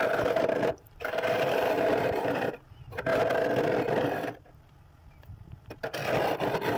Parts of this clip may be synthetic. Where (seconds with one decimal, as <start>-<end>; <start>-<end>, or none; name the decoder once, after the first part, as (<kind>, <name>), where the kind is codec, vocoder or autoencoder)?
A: 0.0-3.1 (vocoder, BigVGAN v2); 4.5-6.0